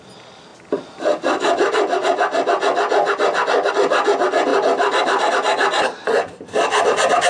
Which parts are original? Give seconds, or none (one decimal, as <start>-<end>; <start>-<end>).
0.0-4.5; 5.3-7.3